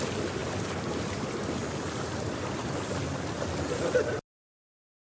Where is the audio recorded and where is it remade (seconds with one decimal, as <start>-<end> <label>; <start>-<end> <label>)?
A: 0.0-5.0 recorded